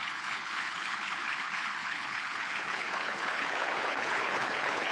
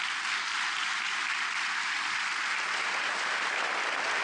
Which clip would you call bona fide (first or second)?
second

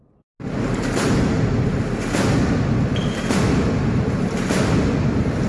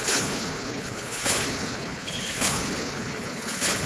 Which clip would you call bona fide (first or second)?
first